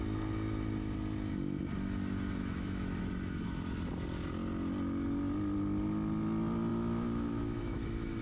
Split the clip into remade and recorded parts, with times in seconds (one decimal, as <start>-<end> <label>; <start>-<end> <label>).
0.0-2.4 recorded; 2.4-3.0 remade; 3.0-6.7 recorded; 6.7-8.2 remade

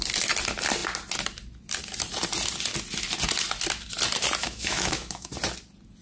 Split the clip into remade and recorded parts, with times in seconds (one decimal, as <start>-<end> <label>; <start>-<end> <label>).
0.0-4.4 recorded; 4.4-5.3 remade; 5.3-6.0 recorded

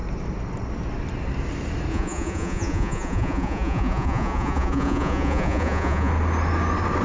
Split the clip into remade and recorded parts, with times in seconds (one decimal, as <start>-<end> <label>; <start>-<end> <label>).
0.0-1.9 recorded; 1.9-6.1 remade; 6.1-7.0 recorded

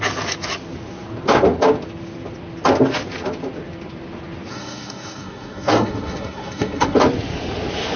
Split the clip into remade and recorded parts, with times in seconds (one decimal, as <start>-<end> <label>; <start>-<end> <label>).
0.0-4.5 recorded; 4.5-7.0 remade; 7.0-8.0 recorded

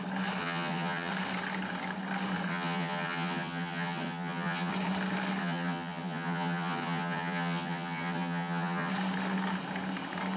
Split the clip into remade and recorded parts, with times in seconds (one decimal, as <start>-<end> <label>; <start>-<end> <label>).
0.0-0.4 recorded; 0.4-1.1 remade; 1.1-2.5 recorded; 2.5-4.7 remade; 4.7-5.4 recorded; 5.4-8.9 remade; 8.9-10.4 recorded

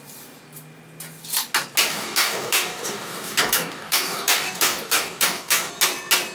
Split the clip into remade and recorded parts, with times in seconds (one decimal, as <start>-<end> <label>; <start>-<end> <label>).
0.0-1.9 recorded; 1.9-5.7 remade; 5.7-6.3 recorded

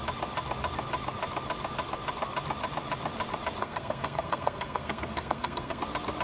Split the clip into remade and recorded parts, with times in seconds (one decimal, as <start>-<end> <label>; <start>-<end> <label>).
0.0-3.6 recorded; 3.6-5.8 remade; 5.8-6.2 recorded

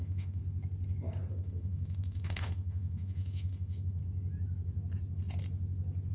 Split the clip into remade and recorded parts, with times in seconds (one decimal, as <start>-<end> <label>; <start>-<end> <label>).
0.0-0.4 remade; 0.4-1.3 recorded; 1.3-4.0 remade; 4.0-6.1 recorded